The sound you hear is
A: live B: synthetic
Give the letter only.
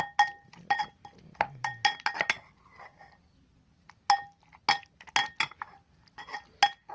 A